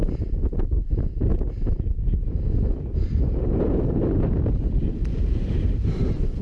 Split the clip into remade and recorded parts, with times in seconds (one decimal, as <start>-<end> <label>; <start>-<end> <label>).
0.0-1.3 remade; 1.3-2.3 recorded; 2.3-6.4 remade